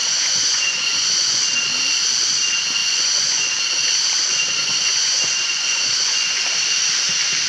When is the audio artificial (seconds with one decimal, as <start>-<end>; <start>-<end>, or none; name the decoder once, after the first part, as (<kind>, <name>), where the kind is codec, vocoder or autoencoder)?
0.0-1.4 (vocoder, Vocos); 2.8-3.5; 4.3-6.4